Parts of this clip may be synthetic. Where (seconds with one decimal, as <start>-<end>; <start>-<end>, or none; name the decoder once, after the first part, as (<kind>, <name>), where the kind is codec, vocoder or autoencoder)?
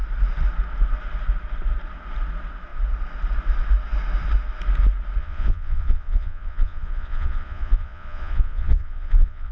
5.2-9.5 (vocoder, Vocos)